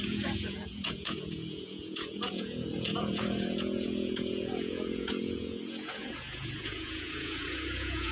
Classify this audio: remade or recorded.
remade